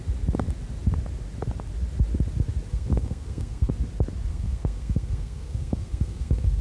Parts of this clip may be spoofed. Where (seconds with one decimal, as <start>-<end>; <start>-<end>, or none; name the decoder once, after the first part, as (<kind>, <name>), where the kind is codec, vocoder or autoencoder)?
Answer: 2.7-3.7 (codec, SNAC); 4.3-6.6